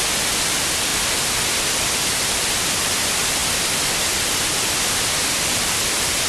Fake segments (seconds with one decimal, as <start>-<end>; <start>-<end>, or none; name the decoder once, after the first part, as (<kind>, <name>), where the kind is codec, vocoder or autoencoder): none